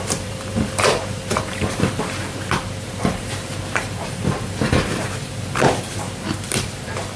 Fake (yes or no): yes